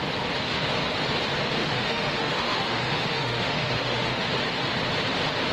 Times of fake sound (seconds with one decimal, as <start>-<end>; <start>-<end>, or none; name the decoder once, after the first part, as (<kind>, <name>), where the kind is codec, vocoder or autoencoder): 1.6-4.3 (autoencoder, DAC-VAE)

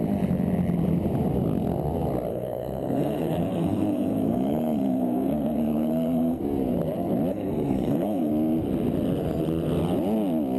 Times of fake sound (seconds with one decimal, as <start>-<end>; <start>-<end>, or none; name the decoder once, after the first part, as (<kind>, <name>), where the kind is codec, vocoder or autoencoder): 2.3-6.4 (codec, SNAC); 7.3-8.3